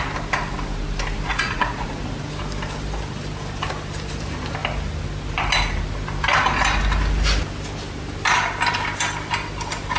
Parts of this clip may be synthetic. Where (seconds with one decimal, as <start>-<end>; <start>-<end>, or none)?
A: 1.3-1.9